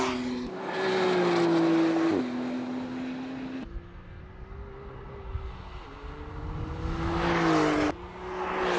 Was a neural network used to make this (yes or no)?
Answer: no